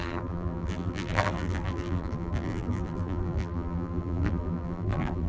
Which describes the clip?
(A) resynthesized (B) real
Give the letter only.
A